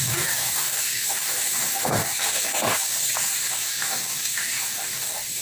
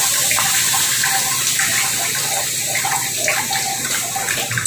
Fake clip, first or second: first